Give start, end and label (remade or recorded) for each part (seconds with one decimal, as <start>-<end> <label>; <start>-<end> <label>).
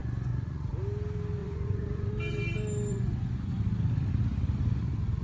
0.0-0.7 remade; 0.7-1.4 recorded; 1.4-2.1 remade; 2.1-2.9 recorded; 2.9-3.5 remade; 3.5-5.2 recorded